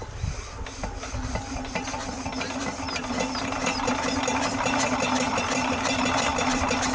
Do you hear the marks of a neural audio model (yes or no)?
no